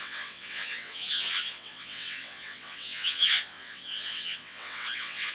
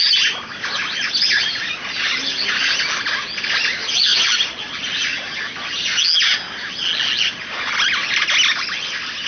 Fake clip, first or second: first